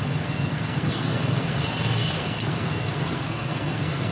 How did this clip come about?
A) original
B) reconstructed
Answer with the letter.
B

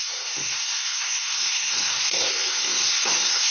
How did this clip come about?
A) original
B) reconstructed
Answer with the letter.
B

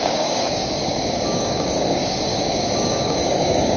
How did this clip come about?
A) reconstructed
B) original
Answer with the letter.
A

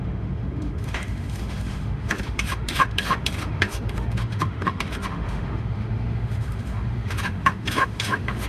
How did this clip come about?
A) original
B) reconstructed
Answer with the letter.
B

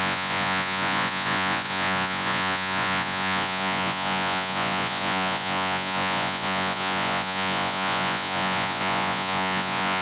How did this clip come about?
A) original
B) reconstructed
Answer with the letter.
B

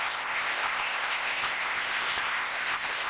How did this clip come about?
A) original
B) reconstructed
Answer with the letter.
B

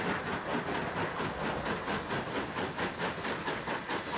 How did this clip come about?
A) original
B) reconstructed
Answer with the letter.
A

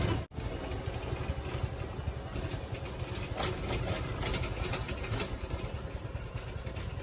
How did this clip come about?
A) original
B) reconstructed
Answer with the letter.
A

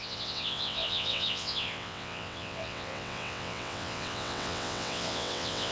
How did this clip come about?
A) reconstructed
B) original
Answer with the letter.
A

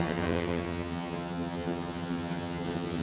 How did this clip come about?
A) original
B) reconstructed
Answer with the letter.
B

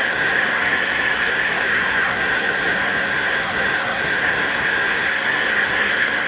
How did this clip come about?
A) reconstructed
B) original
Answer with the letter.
A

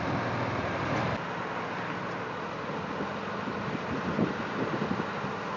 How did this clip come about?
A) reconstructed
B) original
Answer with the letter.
B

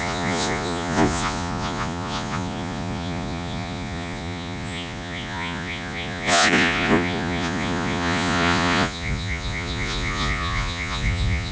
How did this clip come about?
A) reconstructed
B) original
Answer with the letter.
A